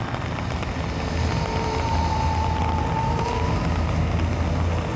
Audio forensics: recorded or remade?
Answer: recorded